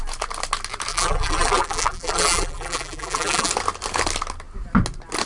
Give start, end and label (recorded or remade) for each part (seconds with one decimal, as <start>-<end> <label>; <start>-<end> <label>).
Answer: 0.0-0.9 recorded; 0.9-3.5 remade; 3.5-5.3 recorded